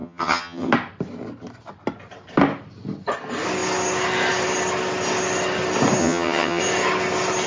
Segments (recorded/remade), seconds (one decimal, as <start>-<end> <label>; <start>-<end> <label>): 0.0-0.7 remade; 0.7-6.0 recorded; 6.0-6.6 remade; 6.6-7.5 recorded